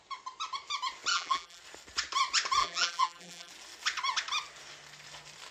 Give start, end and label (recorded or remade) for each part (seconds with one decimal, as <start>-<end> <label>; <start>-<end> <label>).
0.0-1.1 recorded; 1.1-1.6 remade; 1.6-2.6 recorded; 2.6-3.5 remade; 3.5-5.5 recorded